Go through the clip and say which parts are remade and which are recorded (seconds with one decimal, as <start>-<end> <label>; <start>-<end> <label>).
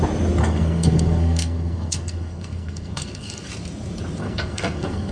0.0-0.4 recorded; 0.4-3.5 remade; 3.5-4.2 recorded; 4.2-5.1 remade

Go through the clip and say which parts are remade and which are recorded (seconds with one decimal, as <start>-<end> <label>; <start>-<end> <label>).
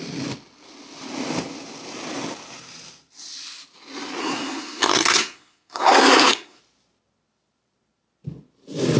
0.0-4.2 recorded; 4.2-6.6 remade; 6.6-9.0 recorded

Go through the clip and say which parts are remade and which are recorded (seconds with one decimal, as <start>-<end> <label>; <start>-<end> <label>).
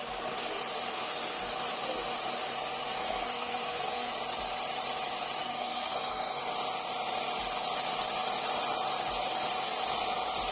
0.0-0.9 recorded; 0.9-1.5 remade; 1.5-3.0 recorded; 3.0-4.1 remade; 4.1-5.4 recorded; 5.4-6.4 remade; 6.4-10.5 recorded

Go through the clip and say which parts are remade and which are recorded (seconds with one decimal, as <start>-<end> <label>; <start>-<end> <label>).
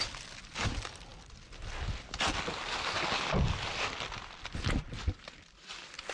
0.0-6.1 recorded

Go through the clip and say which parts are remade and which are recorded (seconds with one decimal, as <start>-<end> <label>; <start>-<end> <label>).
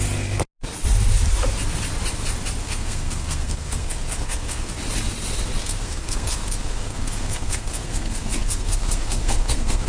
0.0-2.6 recorded; 2.6-4.7 remade; 4.7-5.6 recorded; 5.6-9.9 remade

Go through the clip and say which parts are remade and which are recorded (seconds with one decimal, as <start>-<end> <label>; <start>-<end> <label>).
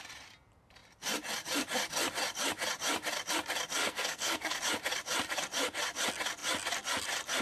0.0-3.8 recorded; 3.8-4.6 remade; 4.6-7.4 recorded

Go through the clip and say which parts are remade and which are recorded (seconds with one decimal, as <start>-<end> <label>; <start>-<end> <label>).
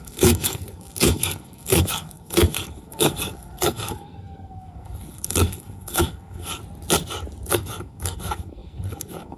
0.0-6.6 remade; 6.6-7.5 recorded; 7.5-9.4 remade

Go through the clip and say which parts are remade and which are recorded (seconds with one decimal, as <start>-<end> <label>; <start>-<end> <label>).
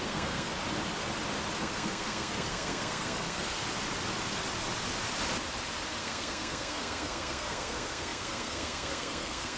0.0-0.5 remade; 0.5-1.6 recorded; 1.6-3.6 remade; 3.6-6.0 recorded; 6.0-9.6 remade